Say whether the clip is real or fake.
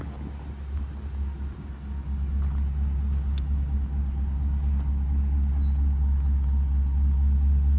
real